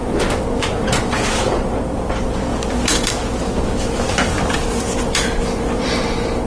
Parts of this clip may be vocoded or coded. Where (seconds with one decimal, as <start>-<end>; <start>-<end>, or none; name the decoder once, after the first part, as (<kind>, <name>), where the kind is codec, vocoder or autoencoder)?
0.0-6.5 (vocoder, BigVGAN v2)